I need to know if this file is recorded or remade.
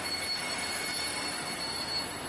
remade